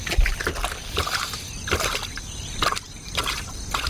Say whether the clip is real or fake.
real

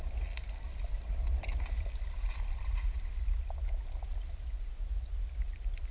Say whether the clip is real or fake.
real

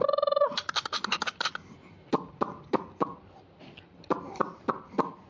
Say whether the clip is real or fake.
real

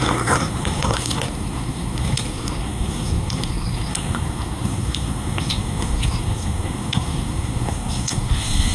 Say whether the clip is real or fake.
fake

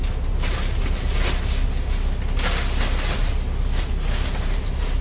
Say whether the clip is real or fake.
real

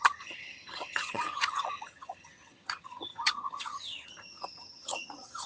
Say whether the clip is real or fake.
fake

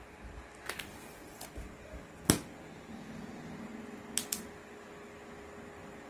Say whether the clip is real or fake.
real